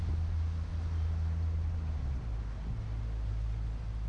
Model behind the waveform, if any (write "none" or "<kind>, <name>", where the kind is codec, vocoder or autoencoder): none